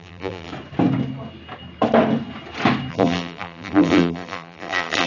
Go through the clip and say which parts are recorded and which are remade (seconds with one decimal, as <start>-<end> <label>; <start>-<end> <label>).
0.0-0.5 remade; 0.5-2.9 recorded; 2.9-5.1 remade